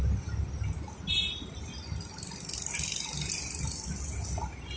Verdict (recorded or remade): recorded